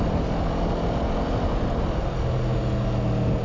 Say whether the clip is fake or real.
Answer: real